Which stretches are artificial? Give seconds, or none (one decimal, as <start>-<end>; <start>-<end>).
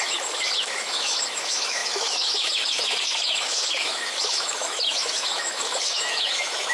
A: 0.0-6.7